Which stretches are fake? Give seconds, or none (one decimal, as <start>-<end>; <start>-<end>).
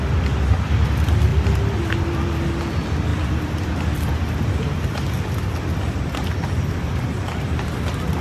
none